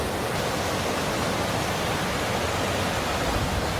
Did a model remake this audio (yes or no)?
no